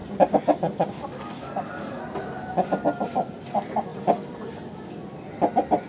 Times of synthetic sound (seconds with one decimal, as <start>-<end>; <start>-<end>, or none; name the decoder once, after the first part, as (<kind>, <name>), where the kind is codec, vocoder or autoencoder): none